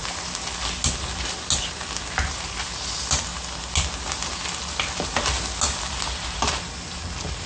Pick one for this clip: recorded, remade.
recorded